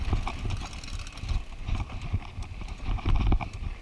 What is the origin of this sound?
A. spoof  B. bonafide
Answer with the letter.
B